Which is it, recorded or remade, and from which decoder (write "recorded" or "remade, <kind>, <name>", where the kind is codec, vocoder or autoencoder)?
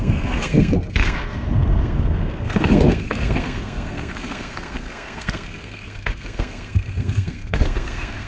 remade, codec, SNAC